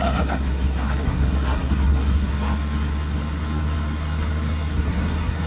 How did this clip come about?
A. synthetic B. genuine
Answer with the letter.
A